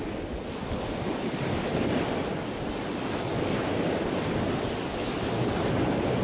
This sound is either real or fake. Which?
real